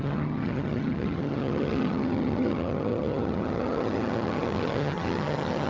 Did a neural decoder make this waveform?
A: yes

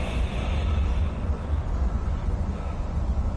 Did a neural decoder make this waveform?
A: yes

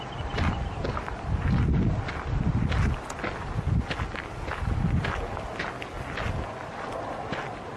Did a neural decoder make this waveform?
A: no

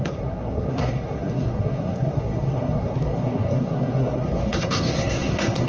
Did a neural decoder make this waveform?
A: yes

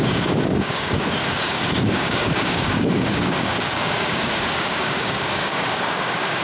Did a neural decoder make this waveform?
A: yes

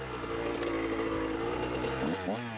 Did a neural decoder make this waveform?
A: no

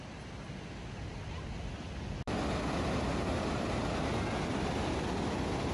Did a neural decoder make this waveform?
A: no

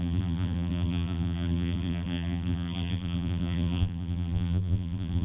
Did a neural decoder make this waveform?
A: yes